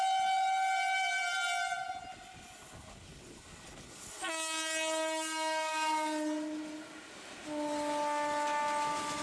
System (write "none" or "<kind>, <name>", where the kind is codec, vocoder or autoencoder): none